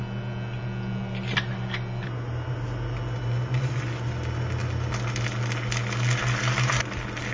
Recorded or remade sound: recorded